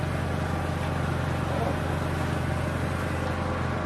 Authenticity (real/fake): real